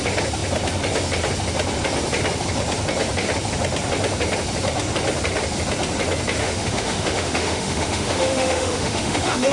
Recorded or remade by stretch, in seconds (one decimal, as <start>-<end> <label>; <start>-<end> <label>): 0.0-6.4 recorded; 6.4-9.5 remade